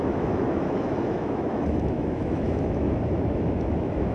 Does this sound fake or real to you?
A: fake